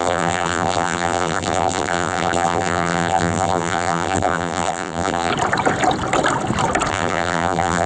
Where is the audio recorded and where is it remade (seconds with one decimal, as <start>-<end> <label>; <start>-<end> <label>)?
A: 0.0-5.3 remade; 5.3-6.9 recorded; 6.9-7.9 remade